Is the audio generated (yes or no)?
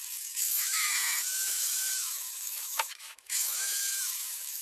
yes